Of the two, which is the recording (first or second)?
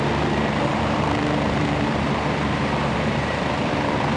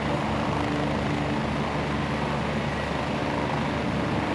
second